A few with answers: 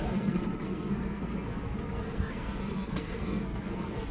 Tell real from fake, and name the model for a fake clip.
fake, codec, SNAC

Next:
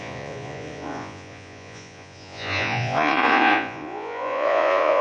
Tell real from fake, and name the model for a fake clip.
fake, vocoder, Vocos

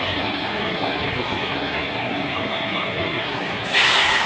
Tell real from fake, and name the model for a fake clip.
fake, codec, SNAC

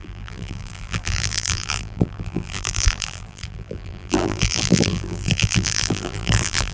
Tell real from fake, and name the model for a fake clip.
fake, vocoder, BigVGAN v2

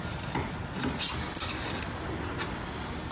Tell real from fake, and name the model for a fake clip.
real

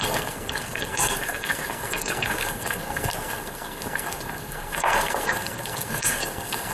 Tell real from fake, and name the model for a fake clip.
fake, codec, SNAC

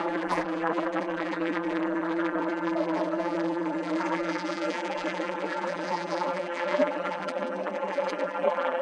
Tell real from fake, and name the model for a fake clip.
fake, vocoder, BigVGAN v2